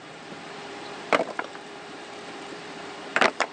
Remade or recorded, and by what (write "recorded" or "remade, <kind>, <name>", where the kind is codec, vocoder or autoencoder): remade, vocoder, BigVGAN v2